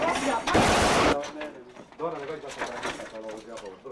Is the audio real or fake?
real